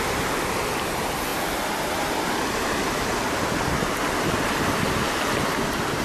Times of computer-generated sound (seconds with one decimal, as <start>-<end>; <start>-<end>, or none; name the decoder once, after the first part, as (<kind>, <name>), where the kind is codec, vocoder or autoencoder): none